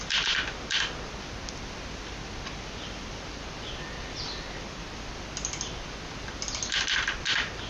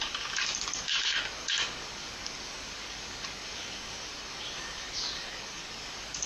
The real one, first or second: first